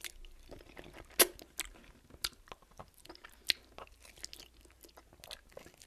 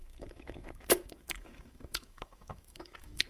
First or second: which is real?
first